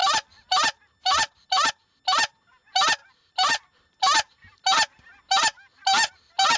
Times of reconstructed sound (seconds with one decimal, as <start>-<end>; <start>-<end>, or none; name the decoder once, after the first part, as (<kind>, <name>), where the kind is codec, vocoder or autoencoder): 0.0-1.7 (vocoder, BigVGAN v2); 3.0-3.9